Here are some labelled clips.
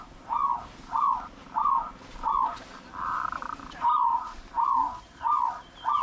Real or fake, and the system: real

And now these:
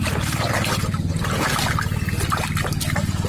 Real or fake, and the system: real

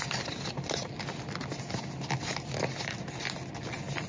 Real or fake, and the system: real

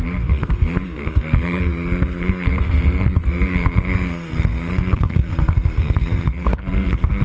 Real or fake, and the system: fake, codec, SNAC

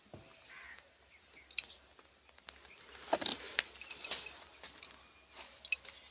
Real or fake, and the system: real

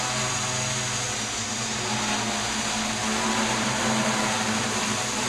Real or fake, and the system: real